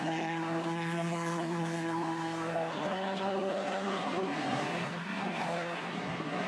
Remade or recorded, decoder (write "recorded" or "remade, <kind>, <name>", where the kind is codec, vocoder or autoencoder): remade, codec, SNAC